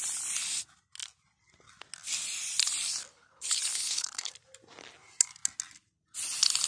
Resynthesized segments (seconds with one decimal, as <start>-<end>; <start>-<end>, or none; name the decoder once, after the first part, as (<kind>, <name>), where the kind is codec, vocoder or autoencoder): 3.1-4.3 (codec, HILCodec)